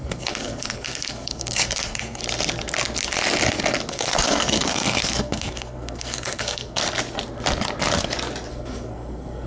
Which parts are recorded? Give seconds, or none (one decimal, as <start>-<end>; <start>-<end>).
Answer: 2.2-3.9; 6.8-8.5